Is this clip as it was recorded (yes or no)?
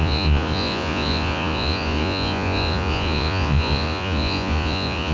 no